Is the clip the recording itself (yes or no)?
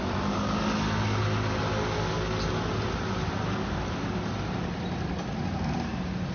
yes